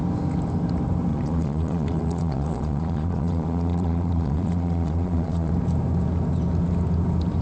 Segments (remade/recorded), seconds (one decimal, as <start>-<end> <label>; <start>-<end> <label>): 0.0-1.1 recorded; 1.1-5.5 remade; 5.5-7.4 recorded